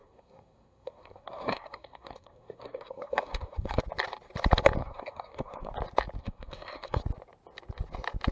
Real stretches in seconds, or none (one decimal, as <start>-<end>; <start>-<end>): 3.8-4.8; 5.7-6.2; 7.0-8.3

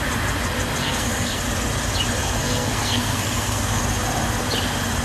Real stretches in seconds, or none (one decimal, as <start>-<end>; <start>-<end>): 0.0-0.8; 1.4-2.2; 3.8-5.0

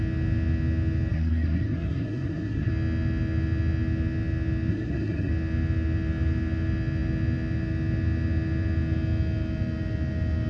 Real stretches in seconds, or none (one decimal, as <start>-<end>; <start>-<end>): 0.0-1.1; 2.7-4.7; 5.3-10.5

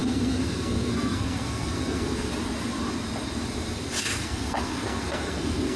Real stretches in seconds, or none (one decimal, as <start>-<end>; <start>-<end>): 2.3-4.0

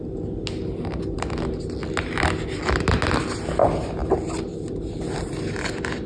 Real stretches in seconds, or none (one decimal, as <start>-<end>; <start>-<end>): 0.0-6.1